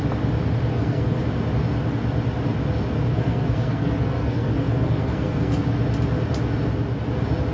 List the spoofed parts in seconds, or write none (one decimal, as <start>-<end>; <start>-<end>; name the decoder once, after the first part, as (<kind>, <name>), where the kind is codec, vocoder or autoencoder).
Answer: 0.7-1.2 (codec, SNAC); 3.1-5.6

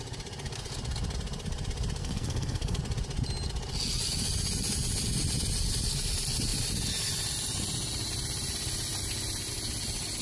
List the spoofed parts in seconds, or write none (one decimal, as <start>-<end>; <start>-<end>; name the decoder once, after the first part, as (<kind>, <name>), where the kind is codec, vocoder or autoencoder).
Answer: 2.0-2.8 (codec, SNAC)

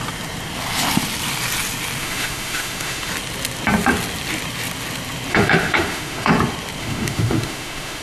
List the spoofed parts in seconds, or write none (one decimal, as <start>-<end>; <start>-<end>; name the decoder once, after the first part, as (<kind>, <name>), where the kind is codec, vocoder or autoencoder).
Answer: 2.0-3.1 (autoencoder, DAC-VAE); 5.3-6.3; 6.8-8.0

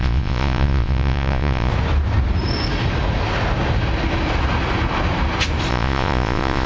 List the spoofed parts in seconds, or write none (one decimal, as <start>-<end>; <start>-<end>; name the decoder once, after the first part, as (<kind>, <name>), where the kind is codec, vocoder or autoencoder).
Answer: 0.0-1.7 (vocoder, Vocos); 5.7-6.7

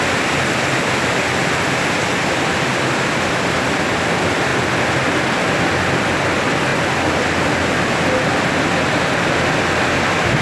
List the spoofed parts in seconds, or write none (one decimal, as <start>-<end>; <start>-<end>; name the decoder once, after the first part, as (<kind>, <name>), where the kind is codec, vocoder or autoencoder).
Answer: 0.0-4.5 (vocoder, BigVGAN v2); 6.2-6.7

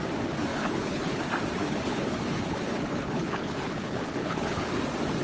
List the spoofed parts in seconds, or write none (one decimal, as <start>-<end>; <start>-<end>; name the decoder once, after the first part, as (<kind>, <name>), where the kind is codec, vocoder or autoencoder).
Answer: 0.5-1.2 (codec, HILCodec); 1.6-4.7

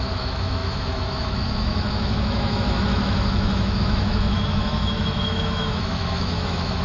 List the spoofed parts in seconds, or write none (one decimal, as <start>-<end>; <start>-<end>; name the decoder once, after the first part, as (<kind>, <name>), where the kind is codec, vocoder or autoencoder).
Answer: 0.0-6.8 (autoencoder, DAC-VAE)